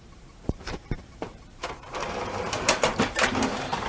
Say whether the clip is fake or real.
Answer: fake